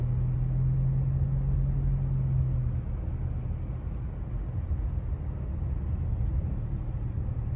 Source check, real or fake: real